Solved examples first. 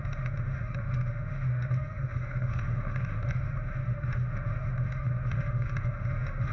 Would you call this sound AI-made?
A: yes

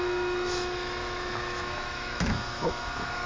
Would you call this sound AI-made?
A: yes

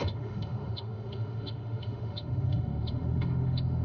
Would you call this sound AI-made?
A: yes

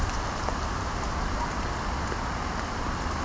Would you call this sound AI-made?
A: no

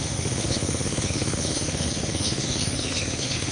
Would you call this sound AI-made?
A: yes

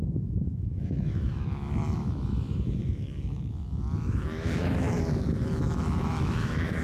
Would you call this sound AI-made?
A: yes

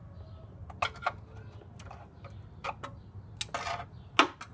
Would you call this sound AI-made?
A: no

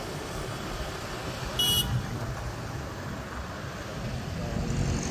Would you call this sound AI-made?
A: no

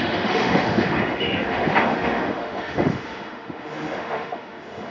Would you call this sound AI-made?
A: yes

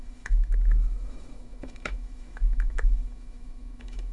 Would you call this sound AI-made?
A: yes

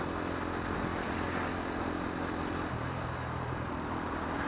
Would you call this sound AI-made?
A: no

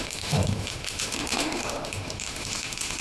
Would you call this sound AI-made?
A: yes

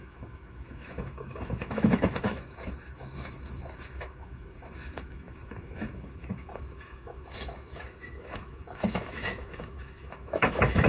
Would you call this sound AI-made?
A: yes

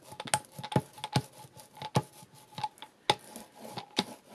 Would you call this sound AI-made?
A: no